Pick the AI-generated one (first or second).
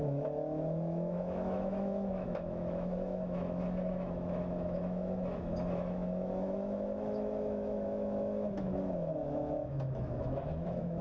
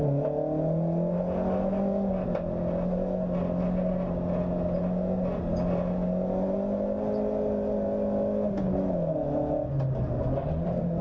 first